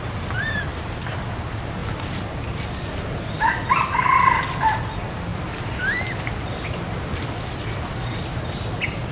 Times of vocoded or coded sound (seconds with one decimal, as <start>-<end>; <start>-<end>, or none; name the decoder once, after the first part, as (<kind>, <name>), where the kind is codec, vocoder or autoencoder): none